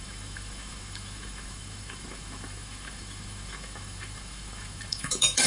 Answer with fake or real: fake